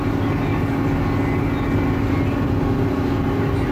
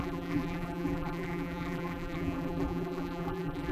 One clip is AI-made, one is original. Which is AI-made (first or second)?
second